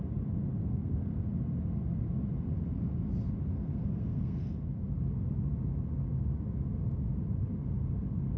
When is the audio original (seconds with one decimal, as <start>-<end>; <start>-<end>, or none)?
0.0-0.6; 1.2-3.5; 4.5-8.4